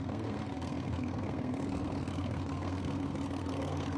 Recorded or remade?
remade